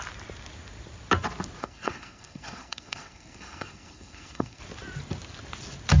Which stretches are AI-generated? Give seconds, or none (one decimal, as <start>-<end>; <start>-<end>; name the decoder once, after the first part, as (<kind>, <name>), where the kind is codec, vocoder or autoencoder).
1.6-4.6 (codec, SNAC)